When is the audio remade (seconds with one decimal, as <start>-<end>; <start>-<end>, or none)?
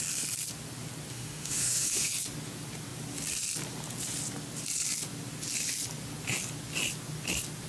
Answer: 1.1-2.1